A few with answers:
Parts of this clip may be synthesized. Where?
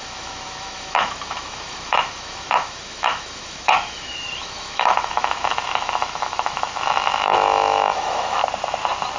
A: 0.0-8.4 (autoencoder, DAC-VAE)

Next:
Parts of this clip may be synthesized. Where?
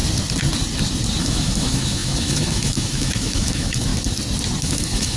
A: 1.2-3.9 (autoencoder, DAC-VAE); 4.6-5.2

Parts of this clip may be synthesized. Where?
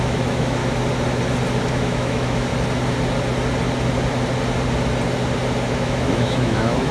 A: 0.0-0.6 (autoencoder, DAC-VAE); 1.7-2.5; 5.7-6.9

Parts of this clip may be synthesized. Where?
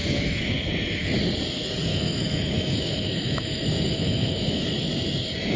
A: 0.0-0.7 (autoencoder, DAC-VAE); 1.9-4.9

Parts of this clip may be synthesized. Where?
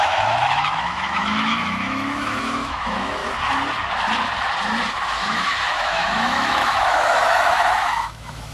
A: 0.0-3.2 (autoencoder, DAC-VAE); 4.9-8.5